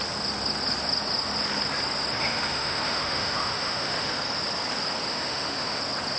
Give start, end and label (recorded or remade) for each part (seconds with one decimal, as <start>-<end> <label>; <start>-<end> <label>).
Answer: 0.0-2.2 recorded; 2.2-4.1 remade; 4.1-5.1 recorded; 5.1-5.8 remade; 5.8-6.2 recorded